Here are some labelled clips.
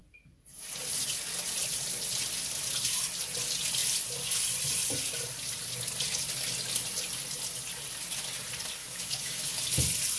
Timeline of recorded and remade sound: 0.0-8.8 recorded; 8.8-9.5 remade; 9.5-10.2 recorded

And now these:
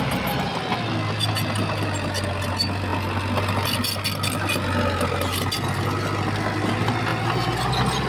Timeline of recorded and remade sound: 0.0-8.1 recorded

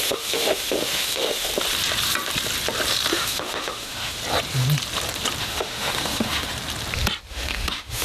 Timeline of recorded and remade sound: 0.0-1.5 remade; 1.5-3.1 recorded; 3.1-4.2 remade; 4.2-5.4 recorded; 5.4-6.5 remade; 6.5-7.3 recorded; 7.3-8.0 remade

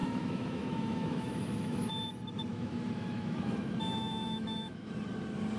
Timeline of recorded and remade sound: 0.0-1.9 remade; 1.9-2.5 recorded; 2.5-4.9 remade; 4.9-5.6 recorded

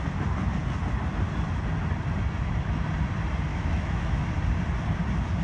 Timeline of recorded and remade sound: 0.0-3.5 recorded; 3.5-4.3 remade; 4.3-5.4 recorded

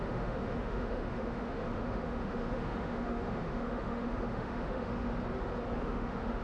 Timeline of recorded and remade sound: 0.0-5.1 remade; 5.1-5.8 recorded; 5.8-6.4 remade